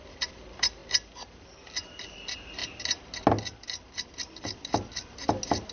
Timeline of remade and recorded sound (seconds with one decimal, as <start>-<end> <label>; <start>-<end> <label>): 0.0-5.7 recorded